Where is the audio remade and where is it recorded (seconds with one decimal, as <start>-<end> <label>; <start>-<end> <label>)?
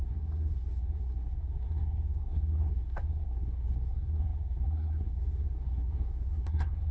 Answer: 0.0-6.9 remade